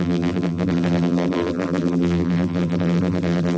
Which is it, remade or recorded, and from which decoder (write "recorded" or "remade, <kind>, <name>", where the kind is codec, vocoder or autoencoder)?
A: remade, vocoder, BigVGAN v2